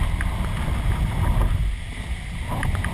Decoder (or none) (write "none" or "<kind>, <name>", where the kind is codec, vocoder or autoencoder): none